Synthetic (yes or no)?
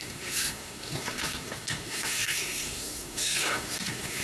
yes